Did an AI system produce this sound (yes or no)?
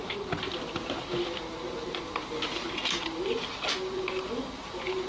no